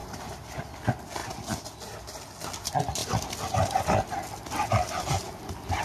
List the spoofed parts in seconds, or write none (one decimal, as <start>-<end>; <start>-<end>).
none